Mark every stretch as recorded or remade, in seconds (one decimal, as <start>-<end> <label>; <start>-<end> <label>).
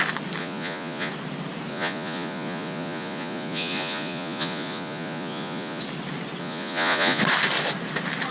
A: 0.0-0.4 recorded; 0.4-1.1 remade; 1.1-1.7 recorded; 1.7-5.8 remade; 5.8-6.4 recorded; 6.4-7.2 remade; 7.2-8.3 recorded